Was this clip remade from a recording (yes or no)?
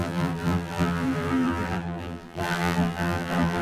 yes